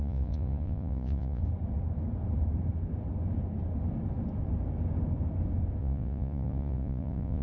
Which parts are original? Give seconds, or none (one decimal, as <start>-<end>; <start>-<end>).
1.4-5.8